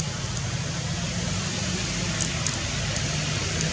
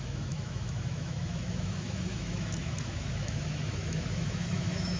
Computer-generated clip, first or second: second